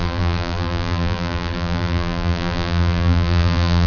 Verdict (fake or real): fake